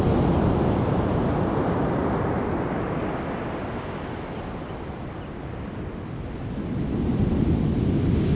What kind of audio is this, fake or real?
real